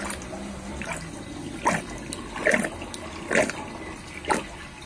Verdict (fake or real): real